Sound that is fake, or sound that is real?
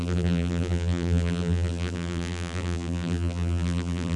fake